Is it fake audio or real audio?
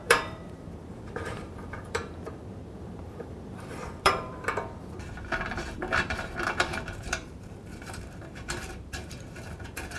fake